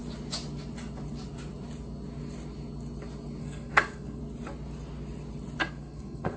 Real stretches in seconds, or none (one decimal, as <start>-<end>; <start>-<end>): 0.0-3.4; 4.2-5.6